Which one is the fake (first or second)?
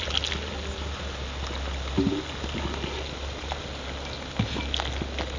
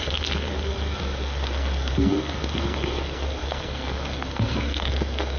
second